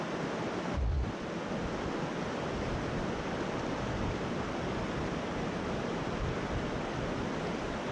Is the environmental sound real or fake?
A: real